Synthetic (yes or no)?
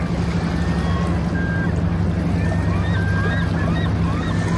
no